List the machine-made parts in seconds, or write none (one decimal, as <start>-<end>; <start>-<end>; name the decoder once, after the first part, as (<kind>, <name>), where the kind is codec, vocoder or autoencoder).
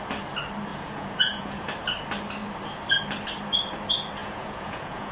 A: 0.7-1.7 (vocoder, Vocos); 4.2-5.1